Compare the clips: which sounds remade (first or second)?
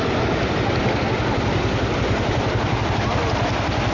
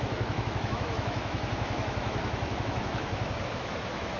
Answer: second